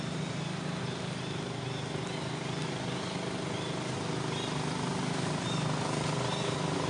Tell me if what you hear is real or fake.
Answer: real